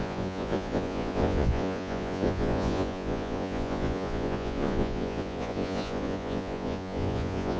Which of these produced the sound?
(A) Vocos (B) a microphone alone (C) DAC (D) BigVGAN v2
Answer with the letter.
A